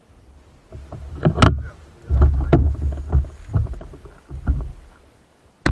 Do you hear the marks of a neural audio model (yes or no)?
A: no